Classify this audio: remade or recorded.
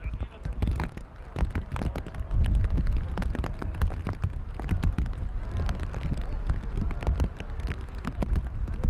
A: recorded